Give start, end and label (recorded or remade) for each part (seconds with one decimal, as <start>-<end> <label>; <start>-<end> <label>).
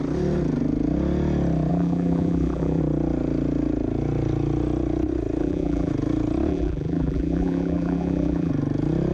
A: 0.0-1.7 recorded; 1.7-2.8 remade; 2.8-5.4 recorded; 5.4-5.9 remade; 5.9-6.5 recorded; 6.5-8.5 remade; 8.5-9.1 recorded